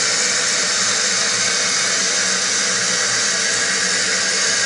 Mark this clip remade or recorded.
recorded